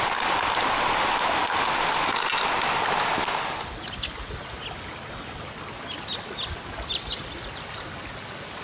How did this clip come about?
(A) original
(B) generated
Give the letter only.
A